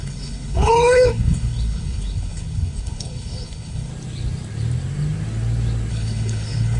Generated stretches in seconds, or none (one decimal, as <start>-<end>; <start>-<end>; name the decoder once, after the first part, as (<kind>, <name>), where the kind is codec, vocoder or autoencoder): 0.0-3.9 (codec, HILCodec); 5.9-6.8